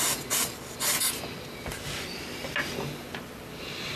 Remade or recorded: recorded